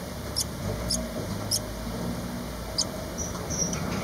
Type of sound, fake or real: real